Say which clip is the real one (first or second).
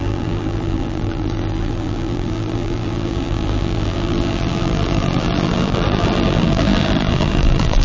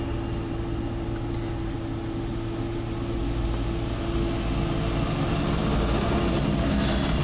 second